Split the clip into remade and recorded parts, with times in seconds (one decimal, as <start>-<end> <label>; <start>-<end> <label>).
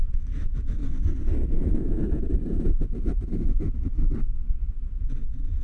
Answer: 0.0-0.8 remade; 0.8-1.9 recorded; 1.9-5.6 remade